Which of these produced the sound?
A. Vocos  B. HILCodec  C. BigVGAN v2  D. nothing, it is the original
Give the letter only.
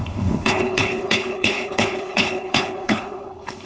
B